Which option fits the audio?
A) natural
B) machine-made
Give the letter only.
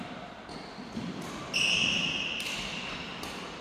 A